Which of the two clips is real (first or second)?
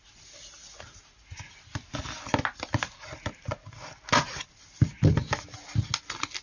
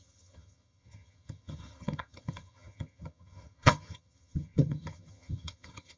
first